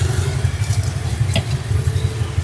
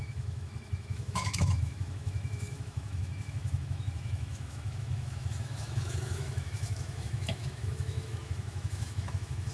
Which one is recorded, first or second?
first